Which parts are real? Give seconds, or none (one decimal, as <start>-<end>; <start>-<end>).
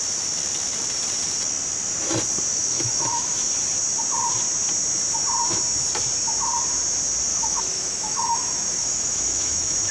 0.0-2.5; 3.5-7.3